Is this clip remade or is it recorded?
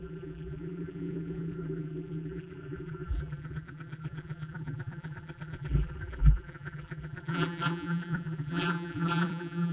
remade